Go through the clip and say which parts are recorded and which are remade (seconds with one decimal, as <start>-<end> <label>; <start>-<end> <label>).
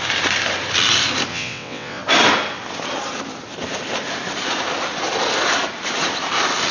0.0-1.3 recorded; 1.3-2.0 remade; 2.0-6.7 recorded